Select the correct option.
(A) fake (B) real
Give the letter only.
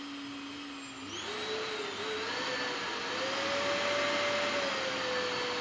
B